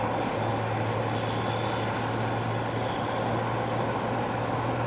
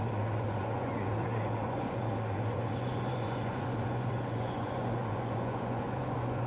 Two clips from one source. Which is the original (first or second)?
first